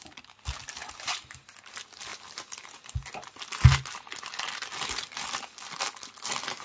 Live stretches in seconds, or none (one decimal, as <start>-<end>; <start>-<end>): 0.0-6.6